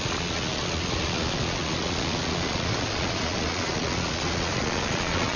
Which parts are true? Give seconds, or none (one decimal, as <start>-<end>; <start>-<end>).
none